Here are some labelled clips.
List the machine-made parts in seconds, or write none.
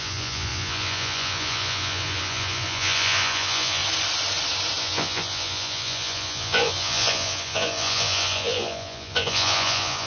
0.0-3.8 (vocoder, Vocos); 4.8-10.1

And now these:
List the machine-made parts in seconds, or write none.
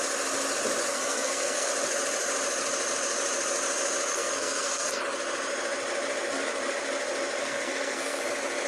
0.9-1.7 (codec, SNAC); 4.1-5.0; 7.4-8.2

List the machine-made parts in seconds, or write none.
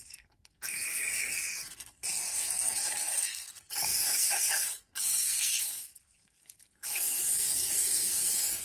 0.0-8.6 (codec, SNAC)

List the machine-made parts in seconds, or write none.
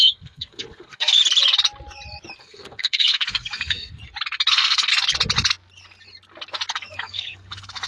0.0-1.2 (codec, SNAC); 2.4-4.0; 4.5-4.9; 6.7-7.9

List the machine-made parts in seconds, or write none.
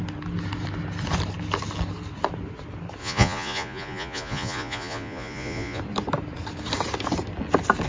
3.0-5.8 (vocoder, Vocos)